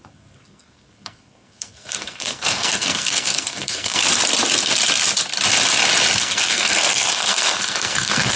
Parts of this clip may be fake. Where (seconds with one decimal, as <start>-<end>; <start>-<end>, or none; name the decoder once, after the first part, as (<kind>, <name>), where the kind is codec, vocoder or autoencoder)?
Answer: 0.0-4.0 (codec, SNAC); 6.2-8.4

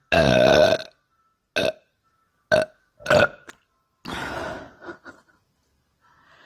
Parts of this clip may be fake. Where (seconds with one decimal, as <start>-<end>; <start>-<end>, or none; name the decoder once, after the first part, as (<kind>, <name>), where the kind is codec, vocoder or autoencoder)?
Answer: none

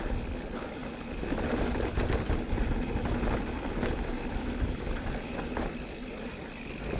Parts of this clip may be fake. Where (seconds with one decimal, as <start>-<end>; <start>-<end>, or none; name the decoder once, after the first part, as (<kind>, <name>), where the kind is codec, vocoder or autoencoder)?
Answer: none

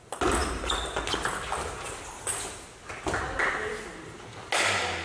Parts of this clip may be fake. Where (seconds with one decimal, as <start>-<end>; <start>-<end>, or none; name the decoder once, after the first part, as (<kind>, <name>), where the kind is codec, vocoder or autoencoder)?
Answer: none

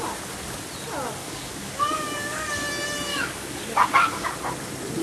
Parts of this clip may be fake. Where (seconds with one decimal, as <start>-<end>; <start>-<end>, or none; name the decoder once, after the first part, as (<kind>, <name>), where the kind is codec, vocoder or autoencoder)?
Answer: 1.2-2.5 (codec, DAC); 3.1-4.3

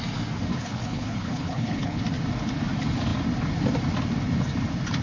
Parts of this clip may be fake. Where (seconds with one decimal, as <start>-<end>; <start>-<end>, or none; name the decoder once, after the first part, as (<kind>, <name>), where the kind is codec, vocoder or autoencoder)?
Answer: 0.5-2.0 (codec, HILCodec)